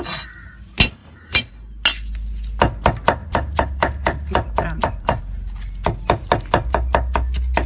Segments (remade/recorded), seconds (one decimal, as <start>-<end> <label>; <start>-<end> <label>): 0.0-1.0 recorded; 1.0-1.5 remade; 1.5-3.2 recorded; 3.2-5.2 remade; 5.2-7.7 recorded